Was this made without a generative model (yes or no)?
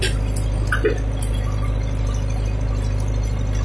yes